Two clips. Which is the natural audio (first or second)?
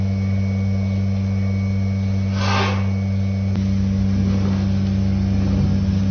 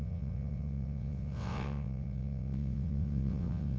first